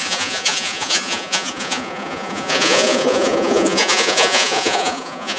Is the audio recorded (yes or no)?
no